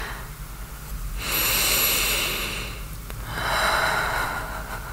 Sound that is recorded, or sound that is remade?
recorded